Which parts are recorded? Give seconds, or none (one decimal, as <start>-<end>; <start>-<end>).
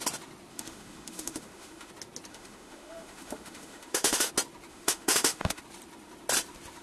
0.0-0.5; 1.9-2.3; 4.3-4.7; 5.6-6.8